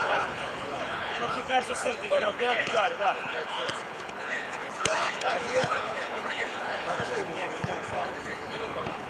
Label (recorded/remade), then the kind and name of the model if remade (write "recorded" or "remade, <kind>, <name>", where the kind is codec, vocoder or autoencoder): remade, codec, HILCodec